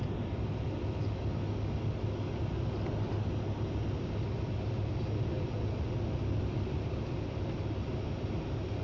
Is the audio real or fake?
real